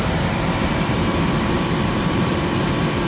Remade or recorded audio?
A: remade